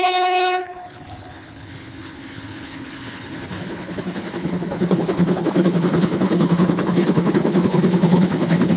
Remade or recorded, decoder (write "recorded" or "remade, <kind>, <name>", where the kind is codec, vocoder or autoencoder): remade, codec, HILCodec